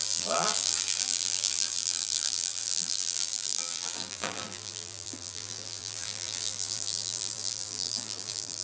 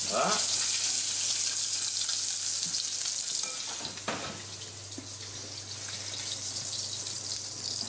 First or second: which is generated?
first